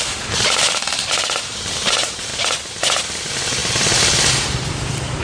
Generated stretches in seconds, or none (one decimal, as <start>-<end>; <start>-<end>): 0.0-2.3; 2.8-3.6; 4.4-5.2